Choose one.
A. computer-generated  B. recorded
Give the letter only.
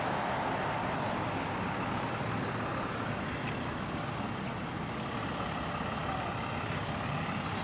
B